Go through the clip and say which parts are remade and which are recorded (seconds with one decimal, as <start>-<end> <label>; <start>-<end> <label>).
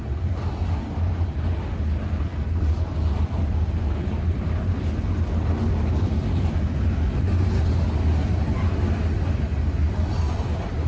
0.0-10.9 recorded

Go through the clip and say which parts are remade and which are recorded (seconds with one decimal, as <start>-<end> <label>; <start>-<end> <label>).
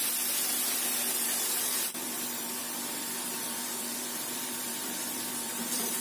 0.0-6.0 remade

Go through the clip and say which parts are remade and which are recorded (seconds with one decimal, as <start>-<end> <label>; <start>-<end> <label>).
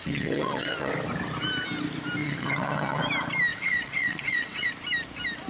0.0-0.9 remade; 0.9-2.2 recorded; 2.2-3.0 remade; 3.0-3.5 recorded; 3.5-4.7 remade; 4.7-5.5 recorded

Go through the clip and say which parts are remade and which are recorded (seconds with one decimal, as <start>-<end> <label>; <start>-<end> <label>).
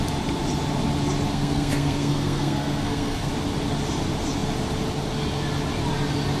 0.0-1.3 recorded; 1.3-3.3 remade; 3.3-6.4 recorded